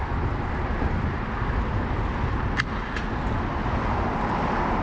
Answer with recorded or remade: recorded